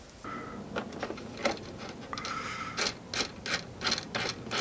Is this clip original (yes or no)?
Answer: yes